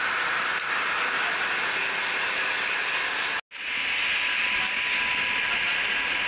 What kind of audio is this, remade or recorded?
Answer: recorded